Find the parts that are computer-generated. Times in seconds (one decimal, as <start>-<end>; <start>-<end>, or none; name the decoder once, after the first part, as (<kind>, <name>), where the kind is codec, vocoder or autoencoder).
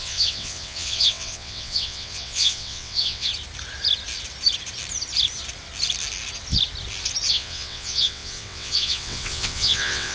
0.0-3.3 (vocoder, WaveNeXt); 7.3-10.1